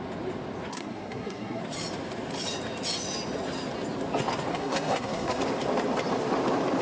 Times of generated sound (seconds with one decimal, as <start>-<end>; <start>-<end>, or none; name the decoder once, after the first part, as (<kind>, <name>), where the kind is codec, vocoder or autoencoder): 0.7-1.6 (codec, SNAC); 4.5-5.4